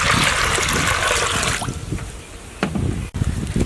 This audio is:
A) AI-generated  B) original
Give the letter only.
B